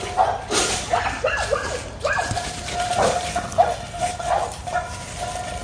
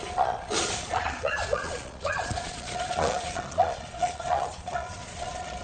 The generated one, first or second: second